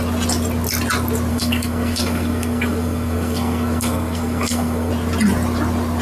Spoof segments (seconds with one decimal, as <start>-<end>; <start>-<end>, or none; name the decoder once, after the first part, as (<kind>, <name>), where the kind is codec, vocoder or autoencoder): 1.3-4.9 (codec, SNAC)